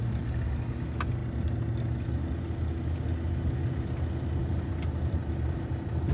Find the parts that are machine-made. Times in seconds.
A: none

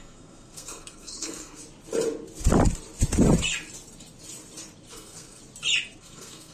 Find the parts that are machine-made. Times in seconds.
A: 0.0-1.6 (codec, SNAC); 4.9-5.4; 6.0-6.5

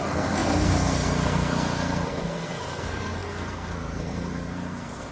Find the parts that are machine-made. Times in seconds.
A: 0.0-5.1 (codec, SNAC)

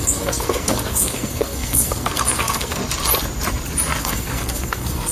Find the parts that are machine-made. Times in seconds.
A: 0.0-2.8 (codec, SNAC); 4.0-5.1

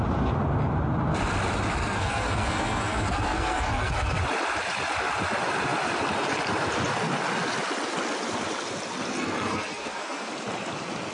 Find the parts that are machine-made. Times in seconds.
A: 1.8-4.2 (codec, SNAC); 9.1-10.3